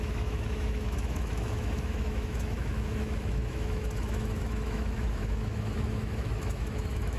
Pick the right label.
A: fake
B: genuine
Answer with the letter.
A